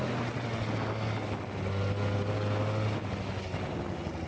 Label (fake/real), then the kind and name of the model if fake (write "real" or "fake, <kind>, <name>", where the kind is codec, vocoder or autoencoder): real